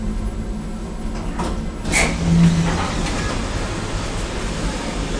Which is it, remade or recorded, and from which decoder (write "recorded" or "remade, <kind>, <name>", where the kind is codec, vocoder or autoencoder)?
recorded